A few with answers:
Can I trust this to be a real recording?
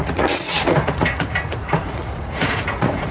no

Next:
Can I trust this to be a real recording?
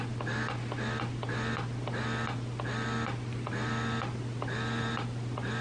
yes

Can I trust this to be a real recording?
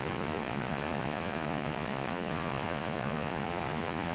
no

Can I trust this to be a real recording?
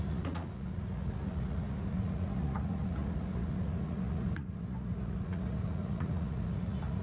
no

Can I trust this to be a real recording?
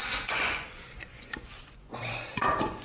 no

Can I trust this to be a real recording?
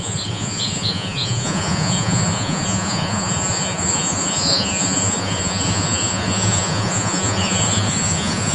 no